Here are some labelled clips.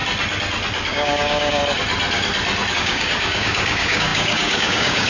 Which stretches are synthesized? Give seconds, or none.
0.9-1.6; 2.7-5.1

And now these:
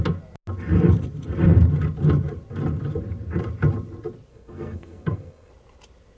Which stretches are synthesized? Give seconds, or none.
4.3-5.5

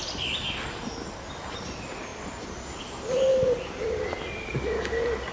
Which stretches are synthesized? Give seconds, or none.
none